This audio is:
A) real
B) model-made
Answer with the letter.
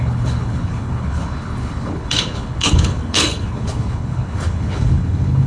B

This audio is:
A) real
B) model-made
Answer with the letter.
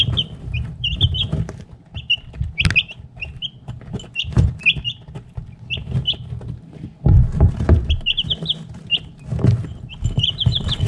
A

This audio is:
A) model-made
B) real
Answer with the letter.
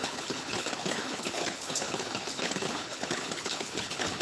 A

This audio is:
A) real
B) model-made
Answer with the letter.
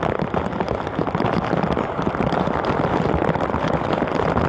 A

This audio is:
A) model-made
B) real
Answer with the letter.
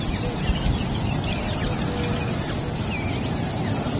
B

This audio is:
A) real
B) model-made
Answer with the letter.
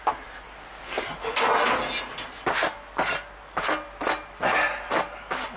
A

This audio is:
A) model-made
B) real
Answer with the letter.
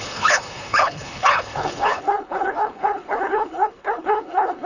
A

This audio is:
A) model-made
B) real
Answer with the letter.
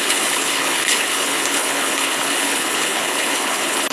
A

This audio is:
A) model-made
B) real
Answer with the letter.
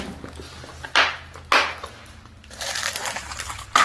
B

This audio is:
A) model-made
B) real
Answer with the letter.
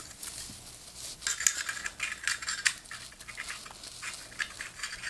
B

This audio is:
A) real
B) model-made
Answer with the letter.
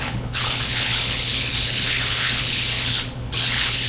B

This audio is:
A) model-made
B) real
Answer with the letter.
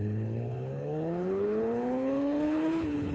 A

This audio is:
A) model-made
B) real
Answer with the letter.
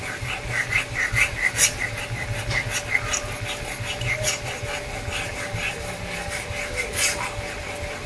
B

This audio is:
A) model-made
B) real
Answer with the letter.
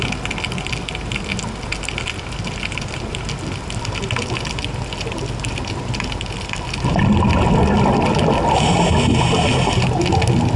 B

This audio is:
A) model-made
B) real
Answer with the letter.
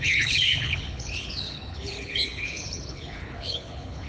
A